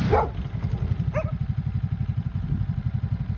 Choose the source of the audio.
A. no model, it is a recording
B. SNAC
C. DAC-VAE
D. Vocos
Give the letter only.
A